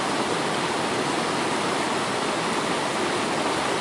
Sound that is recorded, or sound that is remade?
recorded